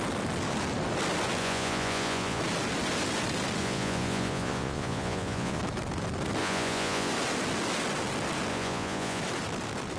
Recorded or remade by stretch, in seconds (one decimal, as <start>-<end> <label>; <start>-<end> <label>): 0.0-1.4 recorded; 1.4-2.4 remade; 2.4-3.6 recorded; 3.6-5.6 remade; 5.6-6.4 recorded; 6.4-7.1 remade; 7.1-8.5 recorded; 8.5-9.2 remade; 9.2-10.0 recorded

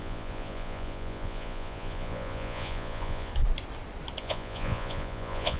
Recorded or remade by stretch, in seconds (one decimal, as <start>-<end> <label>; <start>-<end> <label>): 0.0-3.3 remade; 3.3-4.2 recorded; 4.2-5.6 remade

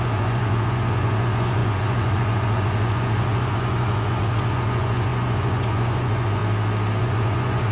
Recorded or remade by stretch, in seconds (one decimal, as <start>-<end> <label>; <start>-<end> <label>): 0.0-6.4 remade; 6.4-7.0 recorded; 7.0-7.7 remade

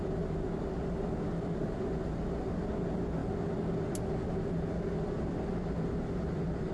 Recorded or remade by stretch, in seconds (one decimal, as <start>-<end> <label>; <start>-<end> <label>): 0.0-6.7 recorded

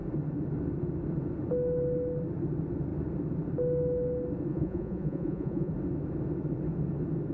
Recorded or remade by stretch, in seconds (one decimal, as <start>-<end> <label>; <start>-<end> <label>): 0.0-4.5 recorded; 4.5-5.7 remade; 5.7-7.3 recorded

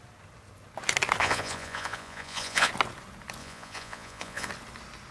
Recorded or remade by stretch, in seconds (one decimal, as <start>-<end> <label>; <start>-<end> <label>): 0.0-1.2 recorded; 1.2-2.7 remade; 2.7-3.4 recorded; 3.4-4.5 remade; 4.5-5.1 recorded

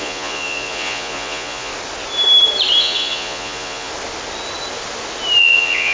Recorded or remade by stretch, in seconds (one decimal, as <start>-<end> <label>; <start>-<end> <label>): 0.0-1.7 remade; 1.7-2.8 recorded; 2.8-3.9 remade; 3.9-5.4 recorded; 5.4-5.9 remade

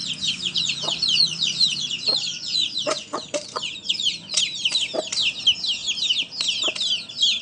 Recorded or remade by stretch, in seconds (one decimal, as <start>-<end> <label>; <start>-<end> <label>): 0.0-4.4 remade; 4.4-7.4 recorded